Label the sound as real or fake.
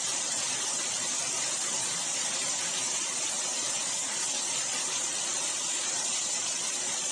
real